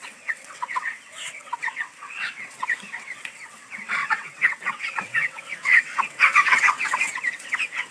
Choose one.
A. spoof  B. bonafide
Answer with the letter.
A